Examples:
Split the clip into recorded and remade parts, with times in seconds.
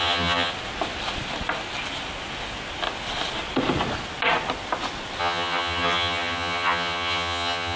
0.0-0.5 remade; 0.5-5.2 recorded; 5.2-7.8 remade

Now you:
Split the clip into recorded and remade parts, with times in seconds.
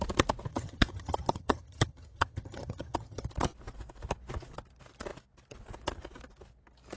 0.0-0.5 recorded; 0.5-3.3 remade; 3.3-7.0 recorded